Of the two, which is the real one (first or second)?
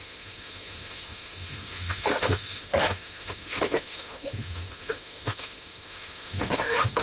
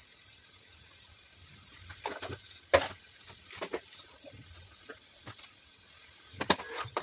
second